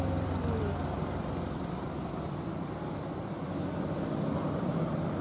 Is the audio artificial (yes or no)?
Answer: yes